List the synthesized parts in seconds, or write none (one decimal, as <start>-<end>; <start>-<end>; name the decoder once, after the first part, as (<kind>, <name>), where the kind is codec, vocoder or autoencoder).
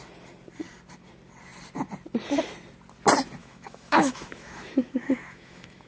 3.4-5.9 (autoencoder, DAC-VAE)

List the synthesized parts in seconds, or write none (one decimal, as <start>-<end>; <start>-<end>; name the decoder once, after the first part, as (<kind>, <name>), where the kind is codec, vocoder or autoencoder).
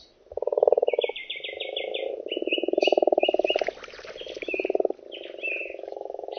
5.6-6.4 (autoencoder, DAC-VAE)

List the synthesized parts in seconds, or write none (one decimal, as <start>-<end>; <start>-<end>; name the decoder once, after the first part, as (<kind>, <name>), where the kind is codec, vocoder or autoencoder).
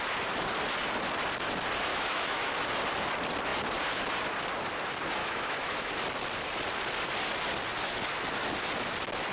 1.9-2.5 (autoencoder, DAC-VAE); 5.2-5.9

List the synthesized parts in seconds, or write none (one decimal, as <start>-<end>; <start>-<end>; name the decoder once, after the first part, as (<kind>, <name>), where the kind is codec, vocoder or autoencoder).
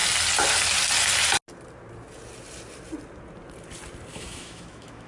4.1-5.1 (autoencoder, DAC-VAE)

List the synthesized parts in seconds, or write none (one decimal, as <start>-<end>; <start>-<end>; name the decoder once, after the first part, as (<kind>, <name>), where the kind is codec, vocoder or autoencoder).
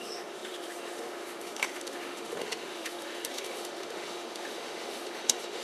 0.0-5.6 (autoencoder, DAC-VAE)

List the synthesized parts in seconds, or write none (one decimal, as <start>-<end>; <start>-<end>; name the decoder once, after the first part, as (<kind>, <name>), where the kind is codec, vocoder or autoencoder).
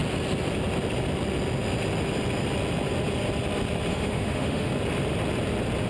3.9-4.7 (autoencoder, DAC-VAE)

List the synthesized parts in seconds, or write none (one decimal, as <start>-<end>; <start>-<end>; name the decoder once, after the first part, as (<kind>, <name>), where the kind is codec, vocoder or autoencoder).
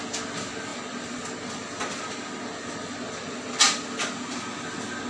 none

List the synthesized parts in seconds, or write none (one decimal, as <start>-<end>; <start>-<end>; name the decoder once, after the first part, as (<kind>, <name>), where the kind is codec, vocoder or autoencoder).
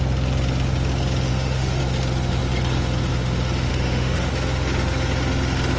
1.3-1.8 (autoencoder, DAC-VAE); 3.7-4.3